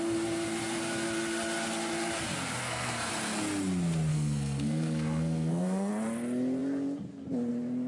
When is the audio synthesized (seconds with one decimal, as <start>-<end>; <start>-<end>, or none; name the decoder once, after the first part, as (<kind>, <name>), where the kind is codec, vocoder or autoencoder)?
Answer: 2.6-3.1 (codec, SNAC); 4.1-5.9